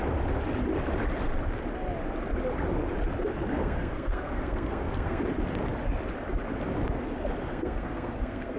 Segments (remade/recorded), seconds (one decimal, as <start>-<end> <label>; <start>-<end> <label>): 0.0-3.5 recorded; 3.5-5.2 remade; 5.2-7.5 recorded; 7.5-8.6 remade